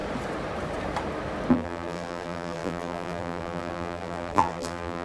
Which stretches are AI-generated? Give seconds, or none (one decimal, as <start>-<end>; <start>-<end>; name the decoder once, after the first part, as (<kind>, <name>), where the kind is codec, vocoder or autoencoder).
1.5-5.0 (vocoder, BigVGAN v2)